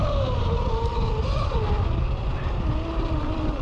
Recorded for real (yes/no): yes